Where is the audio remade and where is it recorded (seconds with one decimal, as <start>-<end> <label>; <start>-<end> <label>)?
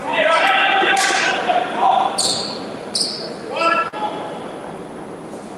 0.0-5.6 recorded